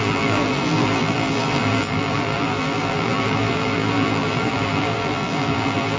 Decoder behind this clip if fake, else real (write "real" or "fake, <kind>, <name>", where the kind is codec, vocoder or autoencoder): fake, vocoder, BigVGAN v2